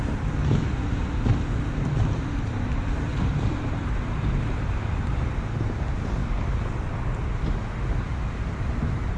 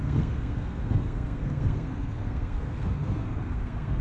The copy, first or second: second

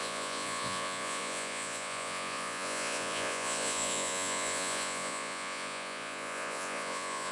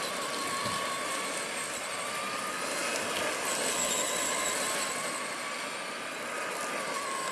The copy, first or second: first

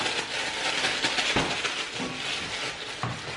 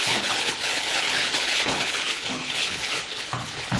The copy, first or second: second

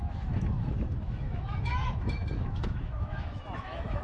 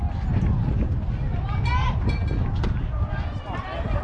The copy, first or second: first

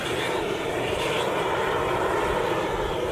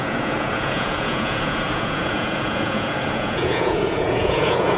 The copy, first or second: second